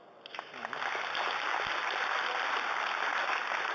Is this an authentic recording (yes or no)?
yes